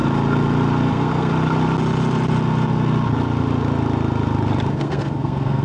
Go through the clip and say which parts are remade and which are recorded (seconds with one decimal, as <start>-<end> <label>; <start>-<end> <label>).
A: 0.0-0.9 recorded; 0.9-1.3 remade; 1.3-4.7 recorded; 4.7-5.6 remade